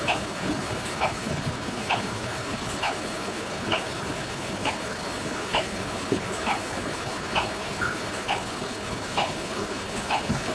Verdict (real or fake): fake